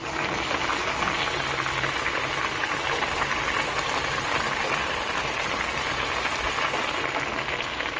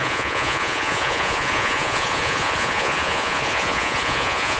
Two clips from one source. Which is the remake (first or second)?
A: second